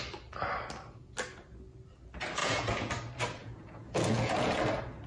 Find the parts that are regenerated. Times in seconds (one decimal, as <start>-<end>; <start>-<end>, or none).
2.4-2.9; 3.4-4.6